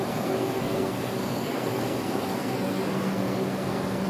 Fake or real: fake